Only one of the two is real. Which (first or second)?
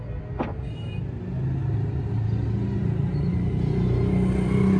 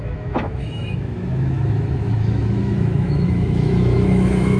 first